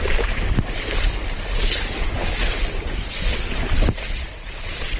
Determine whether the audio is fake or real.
real